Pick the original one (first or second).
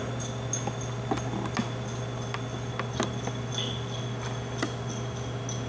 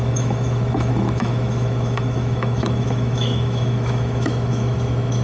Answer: first